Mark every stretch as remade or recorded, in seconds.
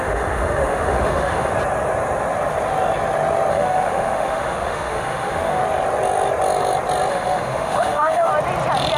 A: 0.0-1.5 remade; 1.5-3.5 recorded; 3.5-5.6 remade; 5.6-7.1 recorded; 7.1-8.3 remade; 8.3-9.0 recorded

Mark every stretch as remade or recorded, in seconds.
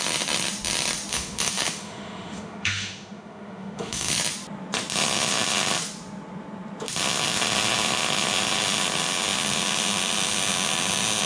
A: 0.0-1.1 recorded; 1.1-4.1 remade; 4.1-11.3 recorded